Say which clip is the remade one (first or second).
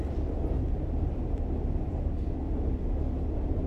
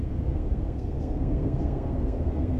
second